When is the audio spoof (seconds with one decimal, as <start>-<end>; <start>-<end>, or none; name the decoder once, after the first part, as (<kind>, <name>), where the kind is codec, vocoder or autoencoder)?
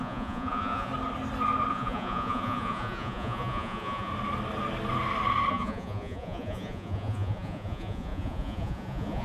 0.0-0.9 (vocoder, Vocos); 1.7-4.1; 5.5-9.2